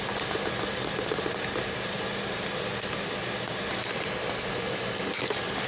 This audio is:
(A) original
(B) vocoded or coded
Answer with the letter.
A